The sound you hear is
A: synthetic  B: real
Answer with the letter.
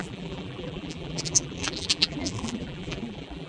A